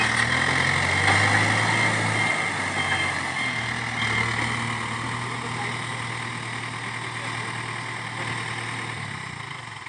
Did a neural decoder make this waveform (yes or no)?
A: no